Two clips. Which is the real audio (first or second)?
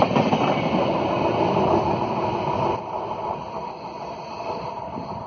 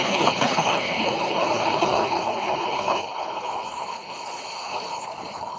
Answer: first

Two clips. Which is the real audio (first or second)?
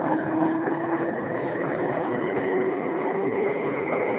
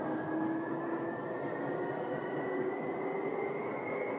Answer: second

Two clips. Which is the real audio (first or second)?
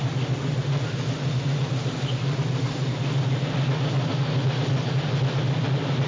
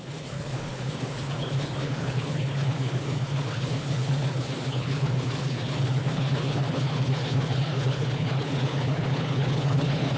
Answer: first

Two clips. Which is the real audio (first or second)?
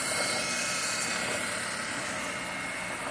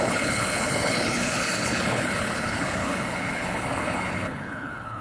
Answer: first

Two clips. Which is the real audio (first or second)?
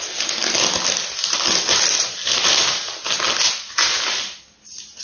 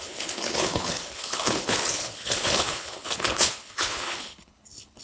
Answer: first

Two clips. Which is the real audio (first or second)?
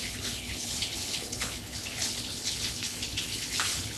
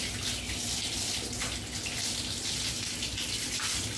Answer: second